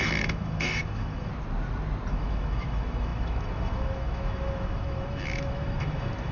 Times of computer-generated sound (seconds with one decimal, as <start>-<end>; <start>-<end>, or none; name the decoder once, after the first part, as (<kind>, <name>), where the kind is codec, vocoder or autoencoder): 0.0-1.3 (autoencoder, DAC-VAE); 2.1-6.3